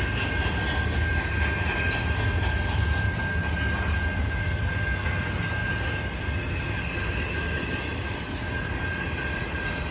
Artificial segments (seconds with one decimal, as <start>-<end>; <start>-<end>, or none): none

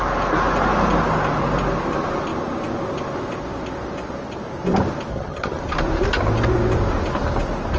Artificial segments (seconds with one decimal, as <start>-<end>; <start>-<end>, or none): 5.1-5.6